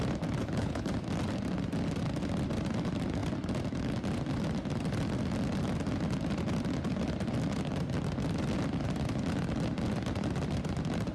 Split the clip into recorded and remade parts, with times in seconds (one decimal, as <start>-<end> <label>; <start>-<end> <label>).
0.0-0.4 recorded; 0.4-0.9 remade; 0.9-11.1 recorded